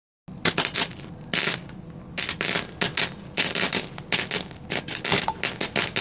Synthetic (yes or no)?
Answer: no